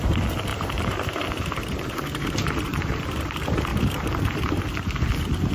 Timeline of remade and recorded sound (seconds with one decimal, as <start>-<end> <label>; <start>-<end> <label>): 0.0-0.5 recorded; 0.5-2.9 remade; 2.9-3.7 recorded; 3.7-4.6 remade; 4.6-5.5 recorded